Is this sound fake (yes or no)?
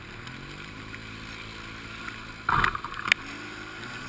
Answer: no